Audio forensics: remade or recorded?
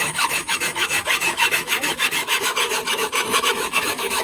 remade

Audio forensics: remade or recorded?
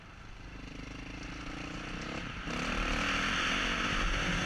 recorded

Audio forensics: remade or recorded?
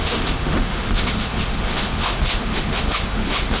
remade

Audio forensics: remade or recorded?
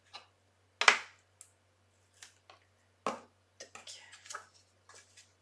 recorded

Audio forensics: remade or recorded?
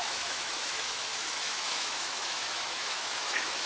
remade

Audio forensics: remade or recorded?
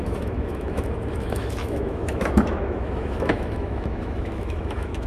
remade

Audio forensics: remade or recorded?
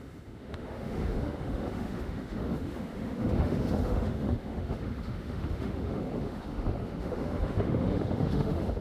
remade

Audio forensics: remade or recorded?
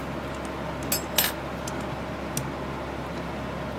recorded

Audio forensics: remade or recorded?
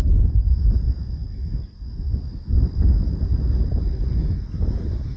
recorded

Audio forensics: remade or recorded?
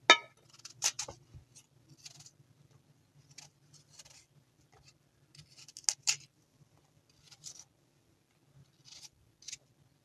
recorded